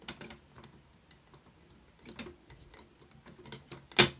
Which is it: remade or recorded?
recorded